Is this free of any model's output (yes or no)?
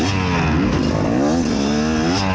yes